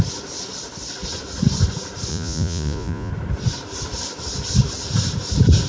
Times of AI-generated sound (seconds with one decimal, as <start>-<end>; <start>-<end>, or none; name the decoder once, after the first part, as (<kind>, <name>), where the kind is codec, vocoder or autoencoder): 2.1-3.1 (vocoder, Vocos)